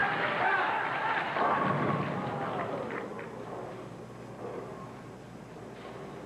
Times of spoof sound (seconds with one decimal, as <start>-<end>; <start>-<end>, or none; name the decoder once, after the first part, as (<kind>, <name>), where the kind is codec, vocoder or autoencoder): none